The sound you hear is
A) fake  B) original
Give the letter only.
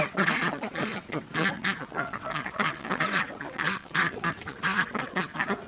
A